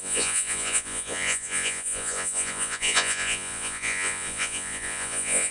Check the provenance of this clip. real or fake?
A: fake